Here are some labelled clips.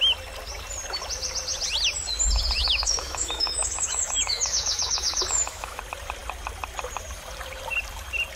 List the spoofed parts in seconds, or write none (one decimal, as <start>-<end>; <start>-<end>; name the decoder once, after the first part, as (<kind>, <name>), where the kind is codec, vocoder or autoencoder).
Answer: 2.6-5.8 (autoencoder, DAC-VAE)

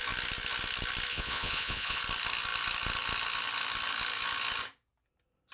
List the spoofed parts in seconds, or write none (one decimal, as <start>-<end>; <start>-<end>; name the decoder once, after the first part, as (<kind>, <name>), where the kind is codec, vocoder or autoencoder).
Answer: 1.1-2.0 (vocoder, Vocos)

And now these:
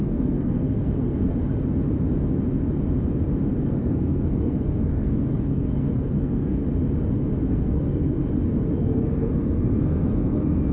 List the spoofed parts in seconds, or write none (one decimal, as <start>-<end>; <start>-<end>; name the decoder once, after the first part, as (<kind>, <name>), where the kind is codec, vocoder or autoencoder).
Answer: 0.0-1.3 (codec, SNAC); 3.6-6.6; 7.5-8.2; 8.8-10.7